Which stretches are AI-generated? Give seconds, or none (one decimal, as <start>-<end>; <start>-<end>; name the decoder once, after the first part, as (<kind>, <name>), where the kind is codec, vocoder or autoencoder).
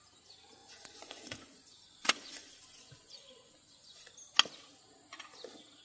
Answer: 0.6-4.1 (vocoder, Vocos)